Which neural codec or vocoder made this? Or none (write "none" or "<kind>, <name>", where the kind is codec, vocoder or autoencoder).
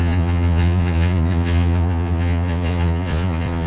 vocoder, Vocos